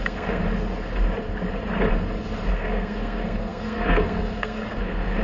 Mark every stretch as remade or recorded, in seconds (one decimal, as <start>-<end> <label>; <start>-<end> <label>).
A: 0.0-0.4 remade; 0.4-2.5 recorded; 2.5-5.2 remade